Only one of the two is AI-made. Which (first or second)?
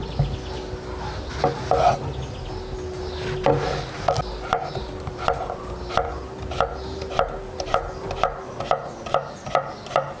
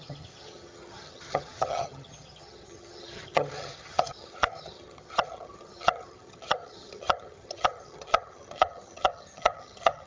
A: second